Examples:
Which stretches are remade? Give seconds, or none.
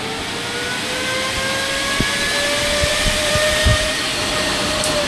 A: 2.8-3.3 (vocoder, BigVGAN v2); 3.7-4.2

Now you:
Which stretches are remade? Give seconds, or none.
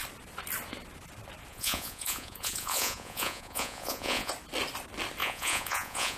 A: 1.5-4.3 (vocoder, Vocos); 5.2-6.2